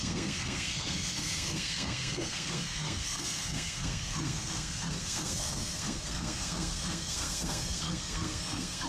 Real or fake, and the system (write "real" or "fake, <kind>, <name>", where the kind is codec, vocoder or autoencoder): fake, codec, SNAC